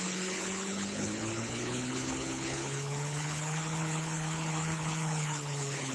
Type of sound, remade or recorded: remade